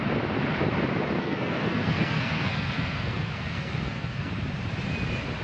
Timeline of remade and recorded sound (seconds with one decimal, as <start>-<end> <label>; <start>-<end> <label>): 0.0-1.2 recorded; 1.2-4.3 remade; 4.3-5.4 recorded